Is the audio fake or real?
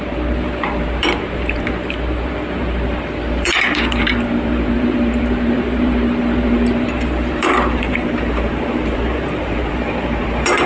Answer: fake